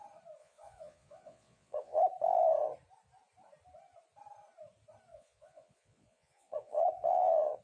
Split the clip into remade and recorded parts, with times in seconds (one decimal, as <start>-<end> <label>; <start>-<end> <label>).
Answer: 0.0-0.4 recorded; 0.4-2.0 remade; 2.0-5.1 recorded; 5.1-7.6 remade